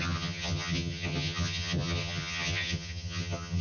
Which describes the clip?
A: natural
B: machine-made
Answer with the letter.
B